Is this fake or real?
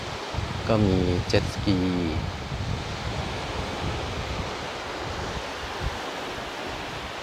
real